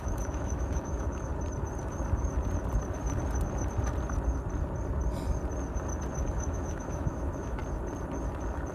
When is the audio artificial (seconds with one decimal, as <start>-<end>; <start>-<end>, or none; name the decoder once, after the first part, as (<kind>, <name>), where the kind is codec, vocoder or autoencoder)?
0.0-1.3 (autoencoder, DAC-VAE); 6.3-7.6